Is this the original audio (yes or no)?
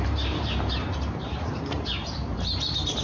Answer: no